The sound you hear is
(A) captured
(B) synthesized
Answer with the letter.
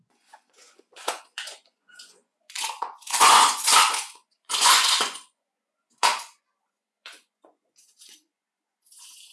B